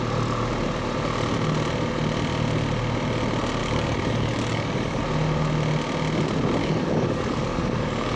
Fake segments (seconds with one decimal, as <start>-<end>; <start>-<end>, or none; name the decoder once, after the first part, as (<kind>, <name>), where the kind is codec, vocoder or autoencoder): 3.6-5.0 (codec, DAC); 6.6-8.2